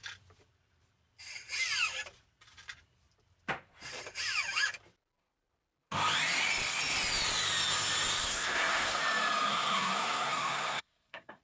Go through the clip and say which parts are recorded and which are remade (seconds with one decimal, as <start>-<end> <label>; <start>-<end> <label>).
0.0-8.2 recorded; 8.2-9.0 remade; 9.0-9.5 recorded; 9.5-11.4 remade